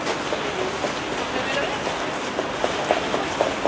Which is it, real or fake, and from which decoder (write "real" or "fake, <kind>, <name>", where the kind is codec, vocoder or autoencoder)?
real